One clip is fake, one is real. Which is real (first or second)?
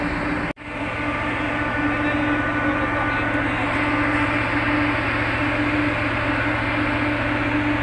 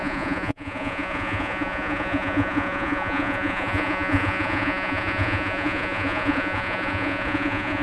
first